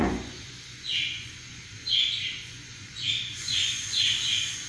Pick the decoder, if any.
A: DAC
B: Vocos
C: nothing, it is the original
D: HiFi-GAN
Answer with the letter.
B